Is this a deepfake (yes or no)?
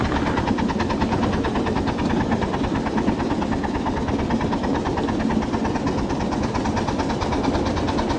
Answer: no